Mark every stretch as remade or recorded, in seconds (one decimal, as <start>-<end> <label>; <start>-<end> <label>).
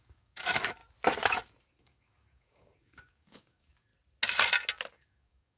0.0-0.8 remade; 0.8-1.8 recorded; 1.8-3.9 remade; 3.9-4.9 recorded; 4.9-5.6 remade